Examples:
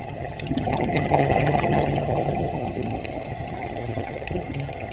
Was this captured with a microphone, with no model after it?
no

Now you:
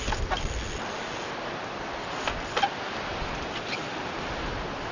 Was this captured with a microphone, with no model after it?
yes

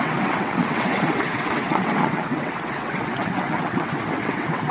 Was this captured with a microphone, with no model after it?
no